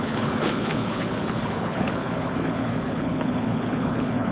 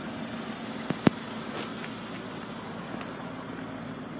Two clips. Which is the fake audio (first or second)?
first